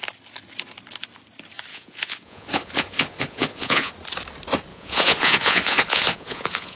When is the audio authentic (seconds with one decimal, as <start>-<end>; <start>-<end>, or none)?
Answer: 0.0-1.7; 3.9-4.7